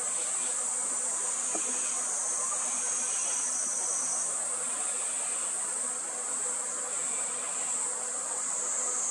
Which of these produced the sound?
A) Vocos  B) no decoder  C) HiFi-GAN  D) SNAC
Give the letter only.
B